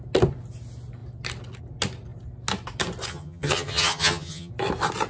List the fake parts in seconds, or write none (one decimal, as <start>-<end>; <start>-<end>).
3.1-4.5